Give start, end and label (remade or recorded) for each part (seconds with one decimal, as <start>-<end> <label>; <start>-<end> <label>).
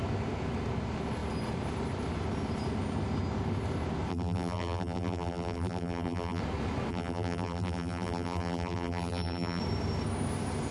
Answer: 0.0-4.1 recorded; 4.1-6.4 remade; 6.4-6.9 recorded; 6.9-9.6 remade; 9.6-10.7 recorded